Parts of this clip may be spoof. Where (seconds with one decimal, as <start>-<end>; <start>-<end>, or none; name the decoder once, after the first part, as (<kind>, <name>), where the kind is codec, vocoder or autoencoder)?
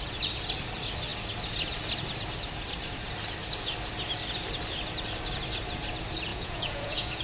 6.3-7.2 (vocoder, Vocos)